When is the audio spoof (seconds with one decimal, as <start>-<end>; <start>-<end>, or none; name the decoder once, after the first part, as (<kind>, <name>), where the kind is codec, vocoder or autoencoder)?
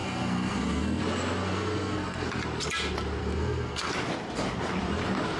0.0-1.0 (codec, SNAC); 1.4-2.3; 3.2-3.9